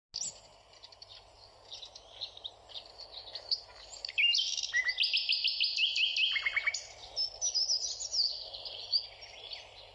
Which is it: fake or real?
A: real